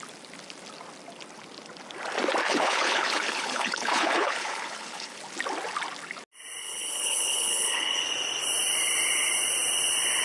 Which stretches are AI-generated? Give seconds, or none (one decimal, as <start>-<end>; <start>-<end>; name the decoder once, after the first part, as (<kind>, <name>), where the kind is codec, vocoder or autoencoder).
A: 2.4-5.2 (codec, HILCodec); 6.6-8.0